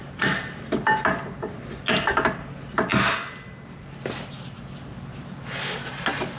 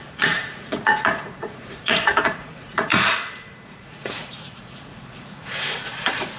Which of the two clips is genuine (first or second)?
first